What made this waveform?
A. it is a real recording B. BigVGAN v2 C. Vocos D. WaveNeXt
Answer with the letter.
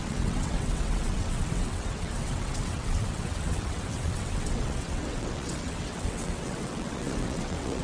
D